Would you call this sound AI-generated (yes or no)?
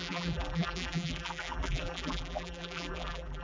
yes